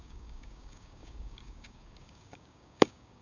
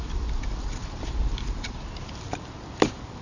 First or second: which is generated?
first